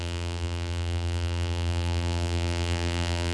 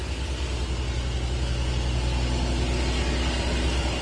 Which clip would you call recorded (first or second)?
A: second